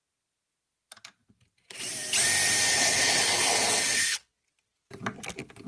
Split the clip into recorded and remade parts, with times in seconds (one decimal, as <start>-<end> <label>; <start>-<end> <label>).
0.0-2.7 recorded; 2.7-4.3 remade; 4.3-5.7 recorded

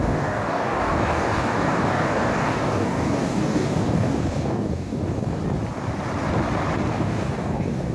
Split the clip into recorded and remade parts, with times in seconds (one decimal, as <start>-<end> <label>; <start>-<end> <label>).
0.0-5.4 remade; 5.4-6.9 recorded; 6.9-7.9 remade

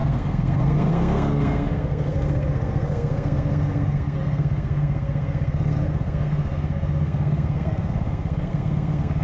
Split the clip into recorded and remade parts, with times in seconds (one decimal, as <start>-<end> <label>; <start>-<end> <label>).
0.0-9.2 remade